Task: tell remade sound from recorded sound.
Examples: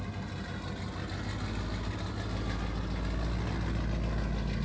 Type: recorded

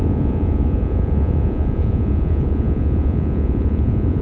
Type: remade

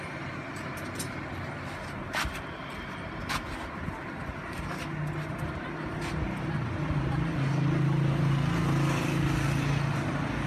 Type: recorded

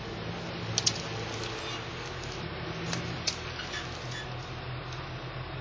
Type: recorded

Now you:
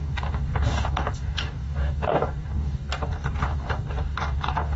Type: remade